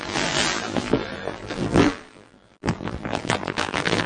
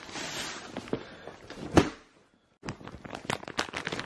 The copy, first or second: first